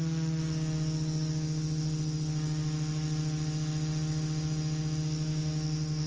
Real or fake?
real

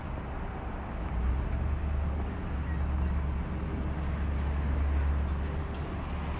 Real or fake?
real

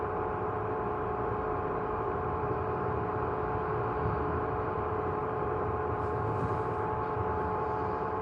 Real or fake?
fake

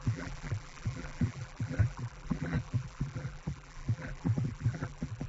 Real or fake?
fake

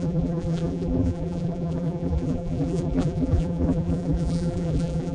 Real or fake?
fake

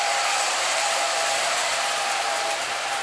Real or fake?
fake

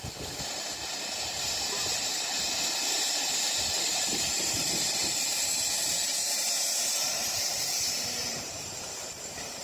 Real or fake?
fake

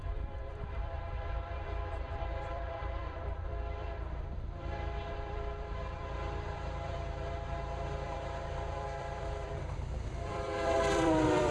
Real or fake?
fake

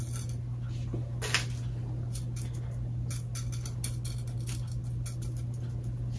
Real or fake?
real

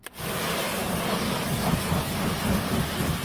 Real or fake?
fake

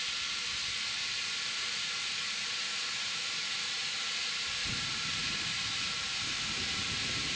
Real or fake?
fake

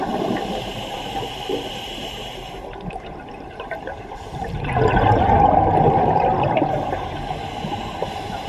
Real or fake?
fake